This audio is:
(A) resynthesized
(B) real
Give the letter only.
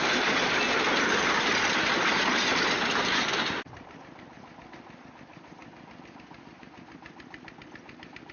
B